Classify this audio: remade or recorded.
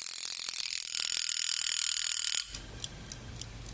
recorded